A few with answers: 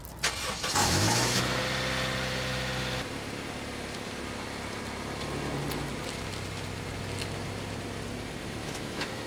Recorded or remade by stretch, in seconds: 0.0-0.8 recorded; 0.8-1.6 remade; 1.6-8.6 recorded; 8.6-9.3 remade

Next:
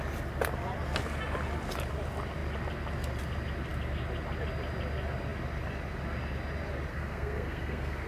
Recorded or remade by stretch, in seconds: 0.0-6.9 recorded; 6.9-8.1 remade